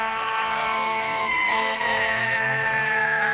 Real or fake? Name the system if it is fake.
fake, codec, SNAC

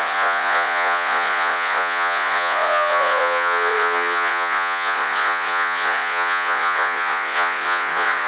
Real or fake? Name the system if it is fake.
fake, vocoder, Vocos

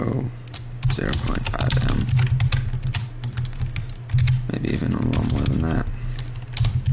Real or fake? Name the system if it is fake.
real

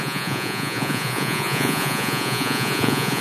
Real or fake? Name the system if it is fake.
fake, vocoder, Vocos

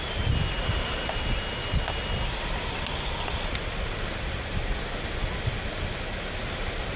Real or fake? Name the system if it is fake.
real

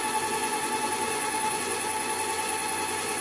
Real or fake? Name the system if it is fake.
fake, vocoder, Vocos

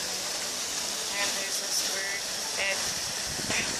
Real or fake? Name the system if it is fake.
real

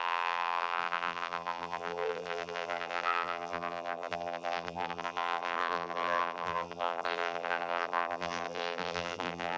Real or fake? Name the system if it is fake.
fake, vocoder, BigVGAN v2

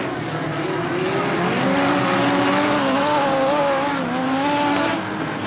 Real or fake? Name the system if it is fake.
real